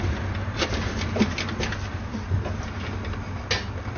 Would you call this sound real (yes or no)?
yes